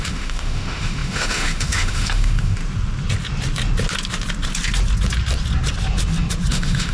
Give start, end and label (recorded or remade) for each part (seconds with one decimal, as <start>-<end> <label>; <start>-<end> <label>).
0.0-2.6 remade; 2.6-6.5 recorded; 6.5-6.9 remade